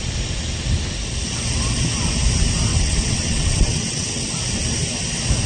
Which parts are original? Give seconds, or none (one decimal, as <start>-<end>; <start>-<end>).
0.0-2.7; 4.2-5.5